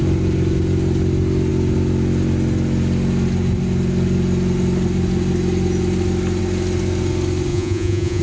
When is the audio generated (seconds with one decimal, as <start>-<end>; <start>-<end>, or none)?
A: 7.5-8.2